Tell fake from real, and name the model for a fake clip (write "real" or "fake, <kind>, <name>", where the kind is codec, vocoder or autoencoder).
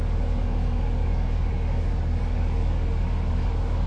fake, codec, DAC